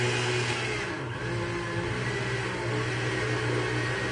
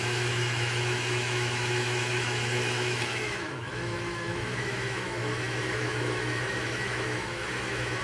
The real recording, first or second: first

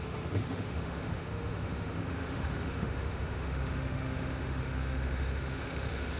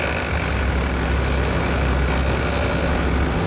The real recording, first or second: second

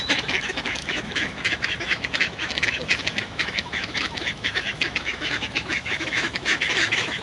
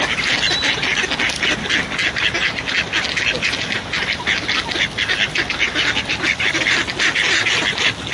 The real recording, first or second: second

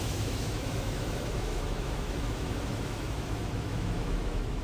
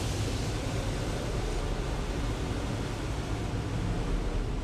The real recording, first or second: second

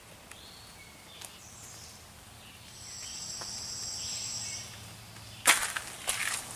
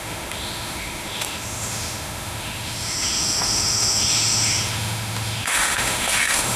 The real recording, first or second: first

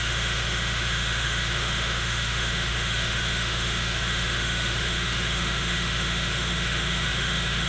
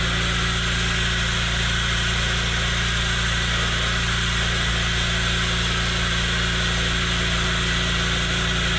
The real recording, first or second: second